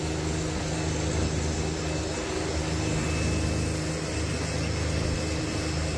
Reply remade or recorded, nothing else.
recorded